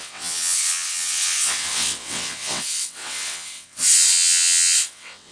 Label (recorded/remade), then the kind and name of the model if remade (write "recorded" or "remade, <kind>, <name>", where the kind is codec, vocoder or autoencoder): remade, vocoder, WaveNeXt